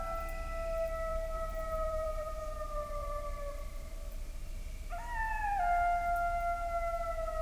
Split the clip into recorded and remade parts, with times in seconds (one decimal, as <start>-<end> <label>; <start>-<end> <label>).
0.0-1.1 recorded; 1.1-4.5 remade; 4.5-7.4 recorded